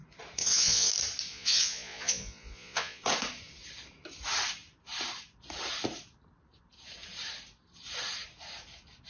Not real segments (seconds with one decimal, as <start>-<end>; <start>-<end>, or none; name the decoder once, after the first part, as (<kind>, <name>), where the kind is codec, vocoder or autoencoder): 0.4-0.9 (vocoder, Vocos); 1.3-3.0